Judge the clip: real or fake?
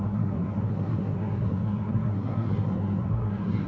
fake